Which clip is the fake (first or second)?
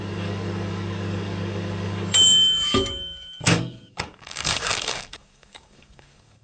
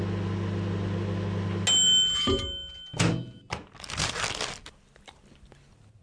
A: first